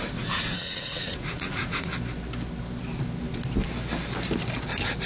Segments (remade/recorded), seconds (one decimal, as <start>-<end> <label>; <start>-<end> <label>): 0.0-1.9 remade; 1.9-5.1 recorded